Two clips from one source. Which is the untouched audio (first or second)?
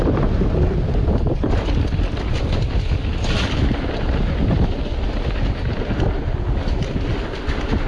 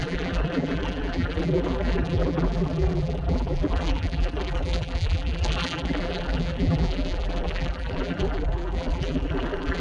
first